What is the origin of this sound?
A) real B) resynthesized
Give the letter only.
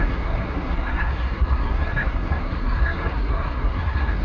B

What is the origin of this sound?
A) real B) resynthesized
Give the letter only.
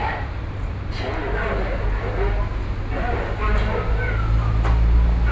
A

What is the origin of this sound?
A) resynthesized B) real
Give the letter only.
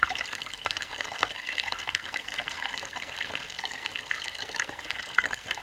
A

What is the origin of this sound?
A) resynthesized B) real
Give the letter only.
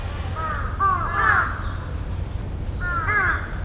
B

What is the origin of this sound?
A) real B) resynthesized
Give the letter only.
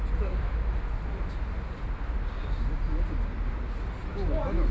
A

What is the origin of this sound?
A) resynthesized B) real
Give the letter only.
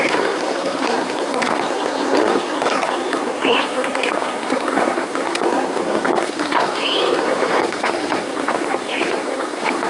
A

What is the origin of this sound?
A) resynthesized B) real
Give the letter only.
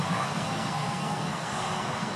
A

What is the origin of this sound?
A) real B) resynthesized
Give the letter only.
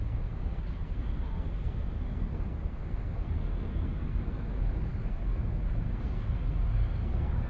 B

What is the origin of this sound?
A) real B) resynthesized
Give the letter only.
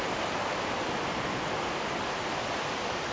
A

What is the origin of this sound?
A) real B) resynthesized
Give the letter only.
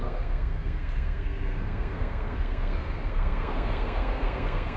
B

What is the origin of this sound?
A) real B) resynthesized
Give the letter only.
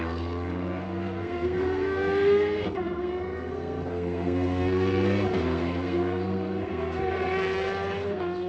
B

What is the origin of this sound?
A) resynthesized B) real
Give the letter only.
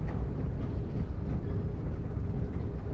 B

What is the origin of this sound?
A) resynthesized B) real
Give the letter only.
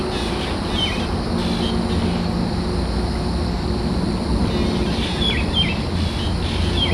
B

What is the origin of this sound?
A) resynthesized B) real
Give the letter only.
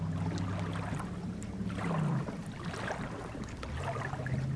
B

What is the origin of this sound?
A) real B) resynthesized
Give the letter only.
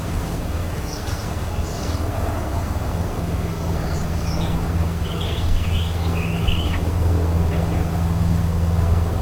B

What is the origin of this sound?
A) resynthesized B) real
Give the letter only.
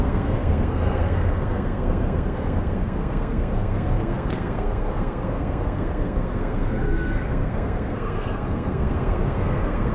A